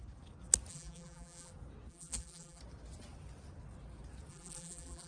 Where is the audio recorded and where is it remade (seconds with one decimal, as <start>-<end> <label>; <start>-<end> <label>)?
0.0-0.7 recorded; 0.7-1.5 remade; 1.5-1.9 recorded; 1.9-2.6 remade; 2.6-4.3 recorded; 4.3-5.1 remade